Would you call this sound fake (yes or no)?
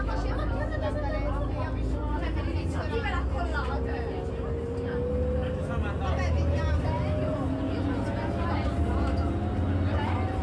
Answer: no